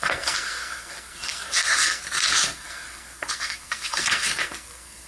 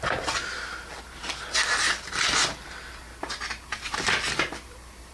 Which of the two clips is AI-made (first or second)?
first